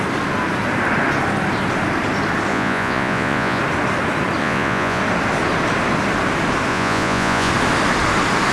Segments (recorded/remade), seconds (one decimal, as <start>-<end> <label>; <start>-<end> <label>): 0.0-2.5 recorded; 2.5-3.6 remade; 3.6-4.4 recorded; 4.4-5.0 remade; 5.0-6.7 recorded; 6.7-7.5 remade; 7.5-8.5 recorded